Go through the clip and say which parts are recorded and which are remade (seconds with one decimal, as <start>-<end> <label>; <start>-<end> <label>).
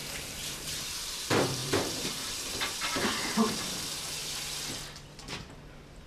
0.0-4.2 remade; 4.2-6.1 recorded